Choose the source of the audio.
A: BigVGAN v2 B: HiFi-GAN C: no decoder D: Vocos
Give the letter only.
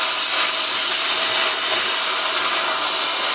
C